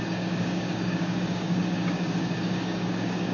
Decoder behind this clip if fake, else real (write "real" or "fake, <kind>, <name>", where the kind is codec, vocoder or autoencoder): fake, codec, DAC